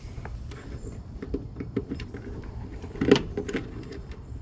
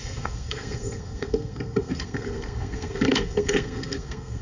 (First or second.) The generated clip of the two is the second